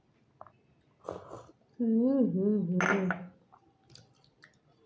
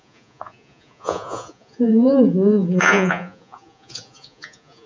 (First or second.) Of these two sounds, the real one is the first